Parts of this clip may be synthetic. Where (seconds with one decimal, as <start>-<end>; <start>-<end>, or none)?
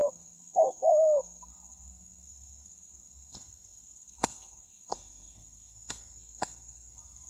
0.0-7.3